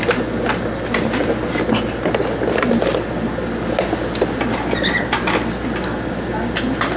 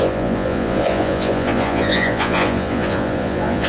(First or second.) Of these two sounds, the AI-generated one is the second